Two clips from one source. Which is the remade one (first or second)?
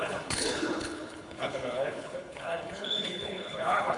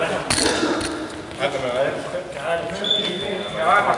first